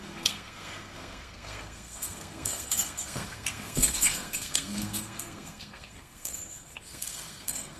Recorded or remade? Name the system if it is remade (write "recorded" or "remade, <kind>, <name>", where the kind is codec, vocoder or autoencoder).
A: remade, codec, SNAC